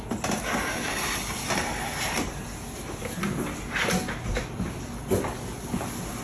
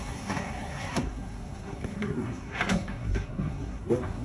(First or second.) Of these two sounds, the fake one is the second